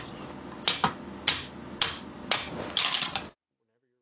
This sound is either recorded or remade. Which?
recorded